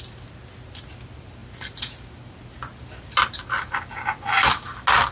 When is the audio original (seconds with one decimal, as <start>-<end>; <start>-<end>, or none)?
0.0-5.1